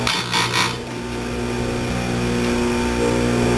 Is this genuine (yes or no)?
yes